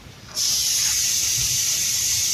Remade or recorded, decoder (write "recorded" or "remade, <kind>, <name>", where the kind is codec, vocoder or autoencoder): remade, vocoder, BigVGAN v2